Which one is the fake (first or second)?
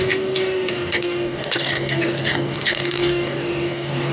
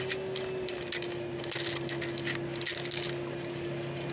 first